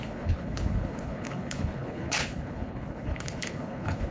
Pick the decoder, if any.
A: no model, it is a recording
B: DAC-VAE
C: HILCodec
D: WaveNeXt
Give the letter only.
C